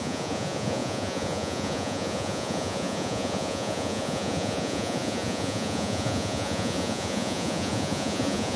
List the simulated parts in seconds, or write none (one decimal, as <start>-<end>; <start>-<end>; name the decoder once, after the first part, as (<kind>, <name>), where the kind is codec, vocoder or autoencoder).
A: 0.0-8.6 (vocoder, Vocos)